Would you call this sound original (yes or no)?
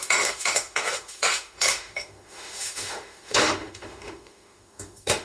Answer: no